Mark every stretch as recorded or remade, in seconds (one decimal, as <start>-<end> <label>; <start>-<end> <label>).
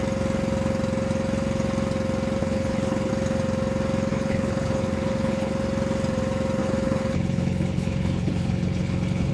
0.0-2.4 recorded; 2.4-3.1 remade; 3.1-4.1 recorded; 4.1-5.5 remade; 5.5-6.6 recorded; 6.6-9.3 remade